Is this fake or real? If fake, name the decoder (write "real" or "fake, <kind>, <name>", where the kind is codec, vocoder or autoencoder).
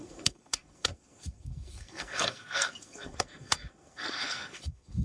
fake, codec, SNAC